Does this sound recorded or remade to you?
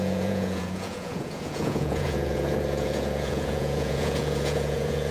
remade